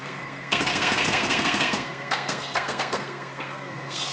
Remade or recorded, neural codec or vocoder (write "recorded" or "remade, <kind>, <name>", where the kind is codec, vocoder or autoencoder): remade, codec, SNAC